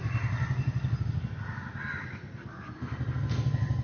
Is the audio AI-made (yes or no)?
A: no